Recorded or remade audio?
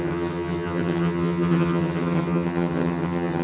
remade